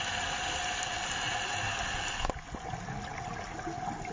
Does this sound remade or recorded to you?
recorded